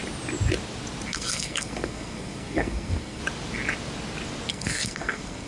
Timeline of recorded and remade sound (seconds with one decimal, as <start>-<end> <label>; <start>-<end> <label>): 0.0-1.1 recorded; 1.1-3.2 remade; 3.2-4.5 recorded; 4.5-5.5 remade